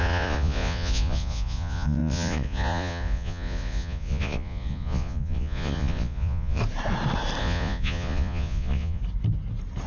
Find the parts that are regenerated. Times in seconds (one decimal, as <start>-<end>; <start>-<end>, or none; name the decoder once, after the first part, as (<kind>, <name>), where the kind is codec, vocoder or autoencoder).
0.0-6.6 (vocoder, Vocos); 7.4-9.0